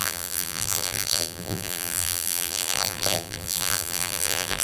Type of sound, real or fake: fake